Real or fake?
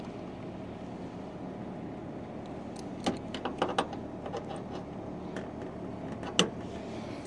real